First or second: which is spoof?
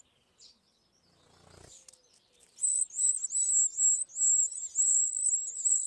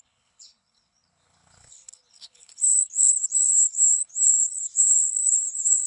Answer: second